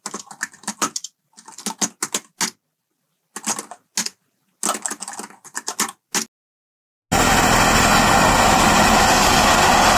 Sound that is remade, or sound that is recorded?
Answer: recorded